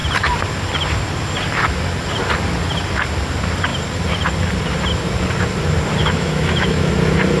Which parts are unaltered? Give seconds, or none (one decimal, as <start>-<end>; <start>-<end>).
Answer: 0.0-6.0; 6.9-7.4